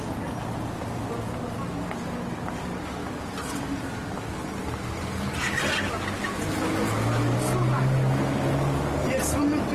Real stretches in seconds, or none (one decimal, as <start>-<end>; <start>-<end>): 0.0-9.7